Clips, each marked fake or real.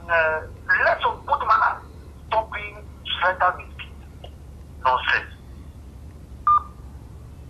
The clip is real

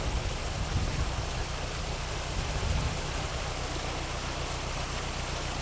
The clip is real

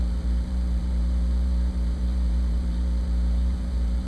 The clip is fake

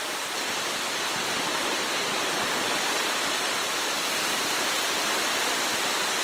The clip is fake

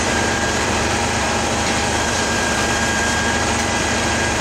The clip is fake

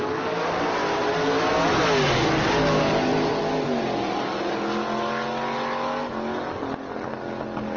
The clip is real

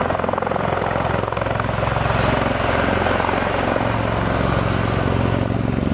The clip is real